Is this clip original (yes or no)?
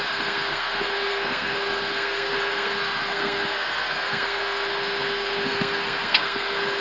no